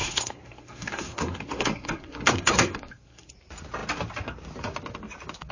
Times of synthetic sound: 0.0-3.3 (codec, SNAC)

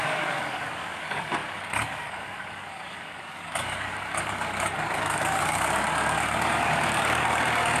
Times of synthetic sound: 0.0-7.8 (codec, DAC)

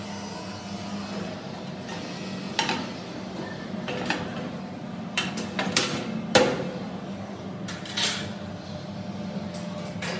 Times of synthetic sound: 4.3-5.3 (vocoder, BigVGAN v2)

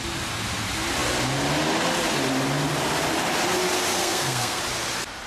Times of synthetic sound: 3.9-4.6 (codec, SNAC)

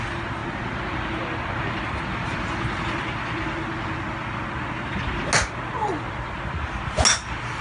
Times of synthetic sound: none

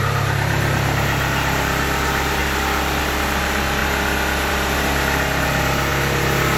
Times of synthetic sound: 0.0-2.4 (vocoder, BigVGAN v2); 3.0-3.8; 4.5-6.6

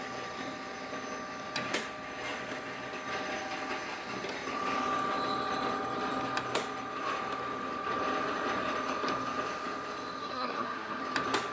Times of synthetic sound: 10.2-11.0 (codec, SNAC)